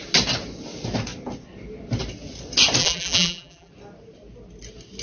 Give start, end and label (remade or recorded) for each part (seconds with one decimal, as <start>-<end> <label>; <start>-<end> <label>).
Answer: 0.0-2.8 recorded; 2.8-3.7 remade; 3.7-5.0 recorded